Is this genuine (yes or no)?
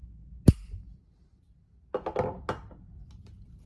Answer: yes